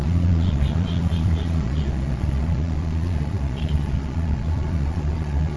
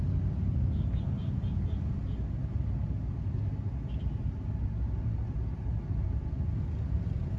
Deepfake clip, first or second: first